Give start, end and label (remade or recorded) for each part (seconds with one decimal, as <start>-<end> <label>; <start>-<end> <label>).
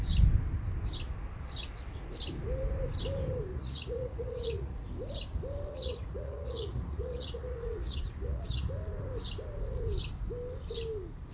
0.0-3.5 recorded; 3.5-4.9 remade; 4.9-5.7 recorded; 5.7-8.7 remade; 8.7-11.3 recorded